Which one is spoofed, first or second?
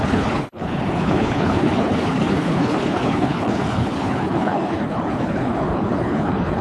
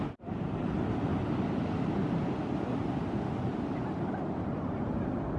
first